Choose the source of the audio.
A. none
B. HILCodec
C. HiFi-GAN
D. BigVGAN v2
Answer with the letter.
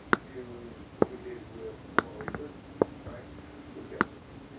A